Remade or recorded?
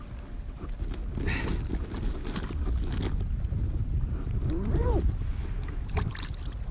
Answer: recorded